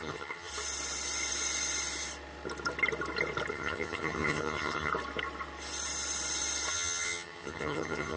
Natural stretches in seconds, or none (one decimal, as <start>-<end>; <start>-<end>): 0.5-3.5; 4.9-6.7